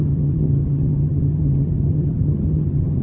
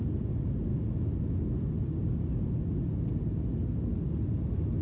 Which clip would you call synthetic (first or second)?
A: first